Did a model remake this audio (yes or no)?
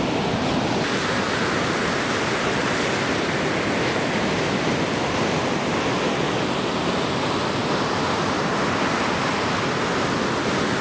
no